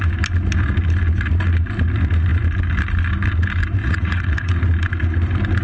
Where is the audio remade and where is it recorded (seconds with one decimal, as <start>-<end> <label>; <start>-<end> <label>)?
0.0-3.8 recorded; 3.8-4.6 remade; 4.6-5.6 recorded